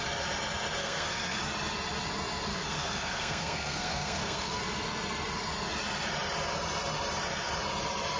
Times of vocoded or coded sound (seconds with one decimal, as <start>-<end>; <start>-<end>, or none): 0.8-1.4; 2.5-4.6